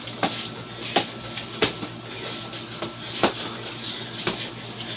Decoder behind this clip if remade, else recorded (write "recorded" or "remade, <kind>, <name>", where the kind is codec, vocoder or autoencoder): recorded